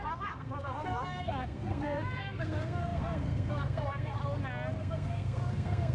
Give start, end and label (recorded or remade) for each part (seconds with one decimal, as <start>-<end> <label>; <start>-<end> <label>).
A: 0.0-4.2 remade; 4.2-4.8 recorded; 4.8-5.9 remade